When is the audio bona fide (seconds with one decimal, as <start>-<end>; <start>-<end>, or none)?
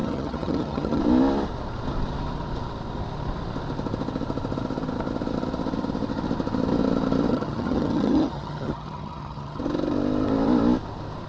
1.0-7.3; 9.6-11.3